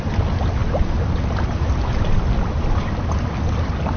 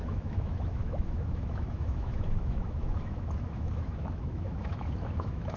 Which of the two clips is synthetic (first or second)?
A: second